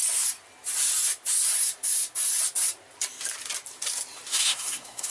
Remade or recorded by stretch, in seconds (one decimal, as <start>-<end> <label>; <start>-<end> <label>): 0.0-4.3 recorded; 4.3-5.1 remade